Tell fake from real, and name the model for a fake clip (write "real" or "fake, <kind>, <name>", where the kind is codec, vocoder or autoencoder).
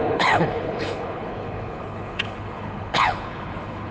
fake, codec, HILCodec